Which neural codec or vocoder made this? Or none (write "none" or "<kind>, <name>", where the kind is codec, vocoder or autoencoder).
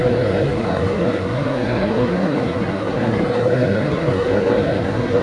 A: codec, SNAC